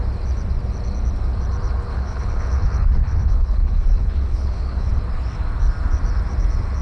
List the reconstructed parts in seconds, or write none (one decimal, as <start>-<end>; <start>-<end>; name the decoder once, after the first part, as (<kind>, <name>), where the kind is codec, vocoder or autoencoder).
1.9-4.9 (codec, HILCodec)

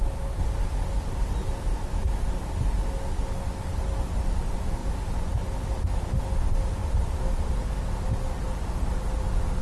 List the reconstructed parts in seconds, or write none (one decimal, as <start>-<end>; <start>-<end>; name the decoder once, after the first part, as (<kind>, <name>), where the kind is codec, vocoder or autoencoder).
1.7-2.2 (autoencoder, DAC-VAE)

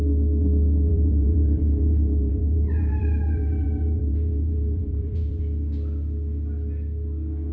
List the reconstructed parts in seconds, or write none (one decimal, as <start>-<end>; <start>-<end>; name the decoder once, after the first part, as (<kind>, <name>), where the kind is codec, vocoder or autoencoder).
0.9-5.4 (vocoder, BigVGAN v2)

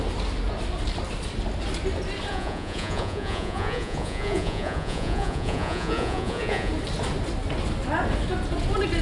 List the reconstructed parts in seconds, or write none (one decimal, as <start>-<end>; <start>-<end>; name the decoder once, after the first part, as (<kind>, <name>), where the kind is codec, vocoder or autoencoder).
2.3-6.7 (vocoder, Vocos)

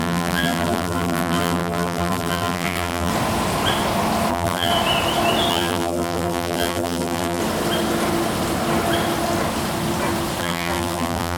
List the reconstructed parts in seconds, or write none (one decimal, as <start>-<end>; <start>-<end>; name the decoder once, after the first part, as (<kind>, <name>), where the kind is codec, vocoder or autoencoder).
0.0-3.1 (vocoder, BigVGAN v2); 4.3-4.7; 5.5-7.4; 10.4-11.4